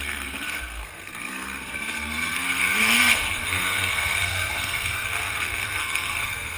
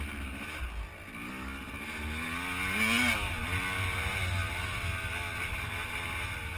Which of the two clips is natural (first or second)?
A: second